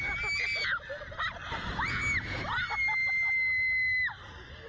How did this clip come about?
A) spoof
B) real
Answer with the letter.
B